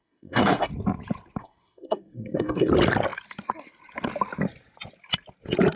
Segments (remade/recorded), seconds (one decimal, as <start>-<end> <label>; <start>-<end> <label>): 0.0-0.7 remade; 0.7-1.4 recorded; 1.4-2.7 remade; 2.7-5.8 recorded